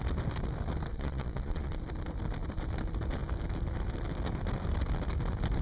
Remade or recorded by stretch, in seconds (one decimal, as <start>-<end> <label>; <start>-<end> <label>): 0.0-0.9 recorded; 0.9-1.8 remade; 1.8-5.6 recorded